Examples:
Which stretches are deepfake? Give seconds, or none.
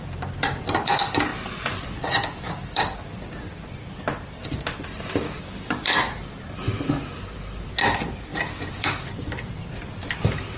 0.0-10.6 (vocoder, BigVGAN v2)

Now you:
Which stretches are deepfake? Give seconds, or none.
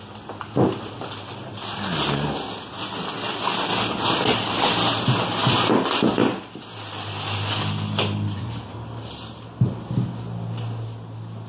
none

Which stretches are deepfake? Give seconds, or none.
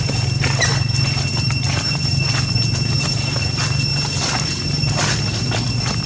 1.3-2.2 (vocoder, BigVGAN v2); 3.9-5.4